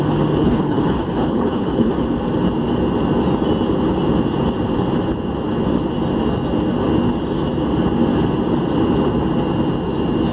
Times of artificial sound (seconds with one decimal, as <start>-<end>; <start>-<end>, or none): 0.4-1.9

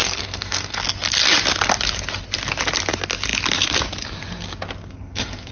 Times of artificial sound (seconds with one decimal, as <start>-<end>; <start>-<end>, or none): 0.0-0.8; 4.8-5.5

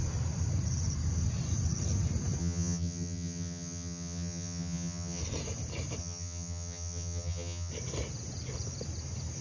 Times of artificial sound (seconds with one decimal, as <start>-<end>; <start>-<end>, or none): 2.4-5.2; 6.0-7.7

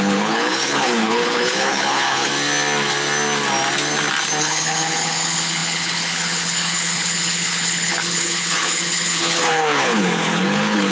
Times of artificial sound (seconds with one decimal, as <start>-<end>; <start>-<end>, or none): 0.0-2.3; 4.4-10.9

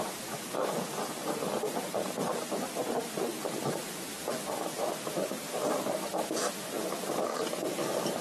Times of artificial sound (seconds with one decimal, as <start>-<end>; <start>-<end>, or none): 4.7-6.5

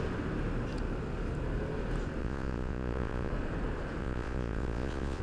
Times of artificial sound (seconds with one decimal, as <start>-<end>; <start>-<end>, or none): 2.2-3.3; 4.0-5.2

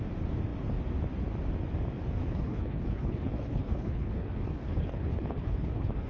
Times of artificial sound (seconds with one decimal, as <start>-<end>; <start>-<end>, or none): 2.2-6.1